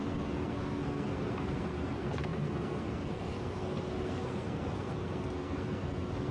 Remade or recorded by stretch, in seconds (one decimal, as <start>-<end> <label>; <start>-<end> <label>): 0.0-6.3 remade